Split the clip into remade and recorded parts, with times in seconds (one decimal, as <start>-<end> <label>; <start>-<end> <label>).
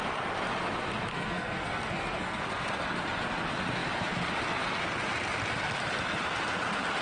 0.0-1.1 recorded; 1.1-2.4 remade; 2.4-7.0 recorded